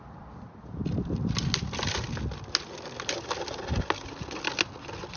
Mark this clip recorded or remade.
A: recorded